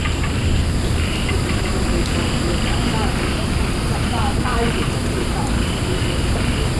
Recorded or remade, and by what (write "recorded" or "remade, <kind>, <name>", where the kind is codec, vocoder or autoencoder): recorded